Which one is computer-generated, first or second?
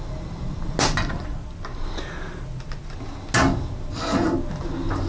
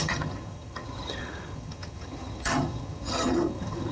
second